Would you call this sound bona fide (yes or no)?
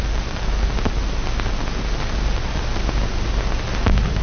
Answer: yes